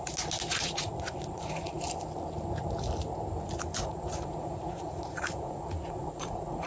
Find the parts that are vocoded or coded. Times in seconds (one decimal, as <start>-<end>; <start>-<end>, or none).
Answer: 0.5-1.8; 3.8-6.7